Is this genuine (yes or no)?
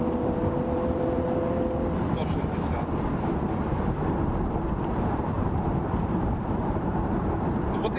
no